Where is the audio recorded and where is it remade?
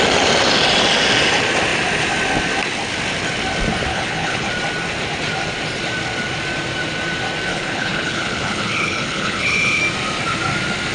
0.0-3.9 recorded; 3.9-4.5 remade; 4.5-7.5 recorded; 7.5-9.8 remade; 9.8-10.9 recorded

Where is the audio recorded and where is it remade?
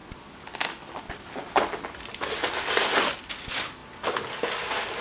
0.0-5.0 recorded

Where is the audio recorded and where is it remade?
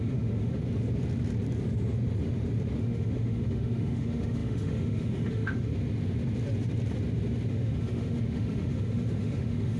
0.0-0.6 remade; 0.6-2.8 recorded; 2.8-5.7 remade; 5.7-7.5 recorded; 7.5-9.8 remade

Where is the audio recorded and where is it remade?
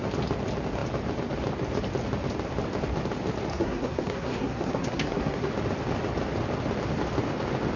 0.0-3.5 recorded; 3.5-5.5 remade; 5.5-7.8 recorded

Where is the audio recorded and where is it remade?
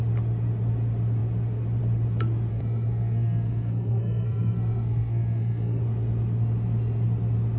0.0-2.5 recorded; 2.5-5.8 remade; 5.8-7.6 recorded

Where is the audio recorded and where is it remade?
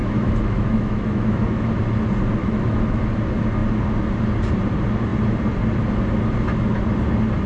0.0-1.7 remade; 1.7-2.4 recorded; 2.4-3.0 remade; 3.0-7.5 recorded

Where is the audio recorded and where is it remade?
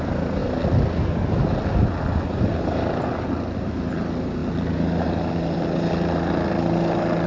0.0-7.3 recorded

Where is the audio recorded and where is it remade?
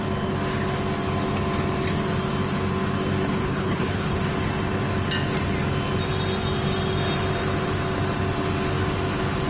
0.0-3.3 recorded; 3.3-4.2 remade; 4.2-9.5 recorded